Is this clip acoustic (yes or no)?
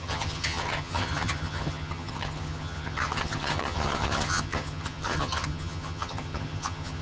no